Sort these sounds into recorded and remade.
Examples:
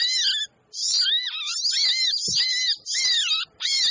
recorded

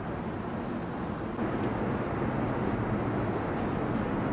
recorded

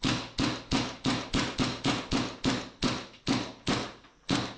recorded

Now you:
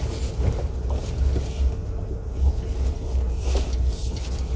recorded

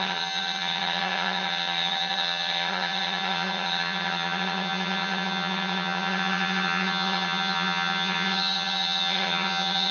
remade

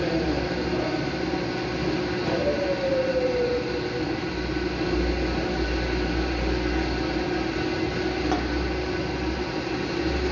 recorded